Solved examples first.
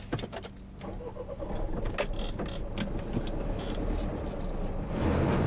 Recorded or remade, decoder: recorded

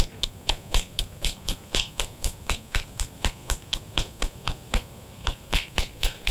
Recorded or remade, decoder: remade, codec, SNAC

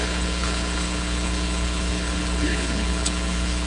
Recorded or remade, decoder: remade, codec, HILCodec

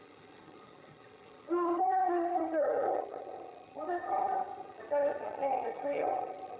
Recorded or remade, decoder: remade, vocoder, HiFi-GAN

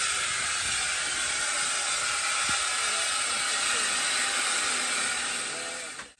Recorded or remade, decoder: recorded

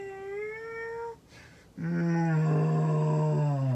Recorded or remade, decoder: recorded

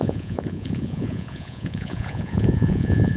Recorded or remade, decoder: remade, vocoder, Vocos